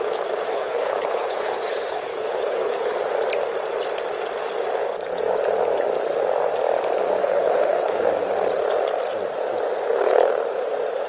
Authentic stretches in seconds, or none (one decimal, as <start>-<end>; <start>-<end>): 0.0-0.5; 3.0-7.2; 8.0-11.1